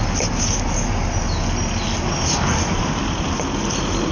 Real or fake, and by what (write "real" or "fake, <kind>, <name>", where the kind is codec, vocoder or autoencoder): real